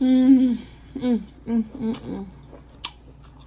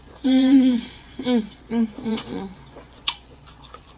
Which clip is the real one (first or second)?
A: first